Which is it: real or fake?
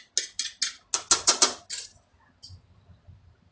real